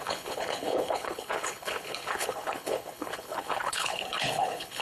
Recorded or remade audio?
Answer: remade